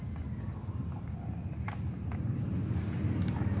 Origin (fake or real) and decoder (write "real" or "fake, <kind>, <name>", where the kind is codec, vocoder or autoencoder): real